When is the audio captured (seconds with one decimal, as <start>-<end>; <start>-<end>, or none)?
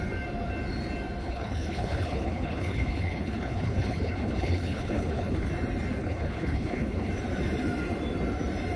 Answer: 0.0-1.2; 5.5-6.0; 7.1-8.8